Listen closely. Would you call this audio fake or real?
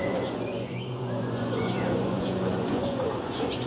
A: fake